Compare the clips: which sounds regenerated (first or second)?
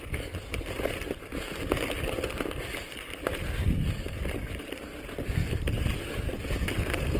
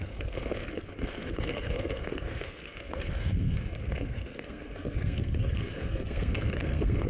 second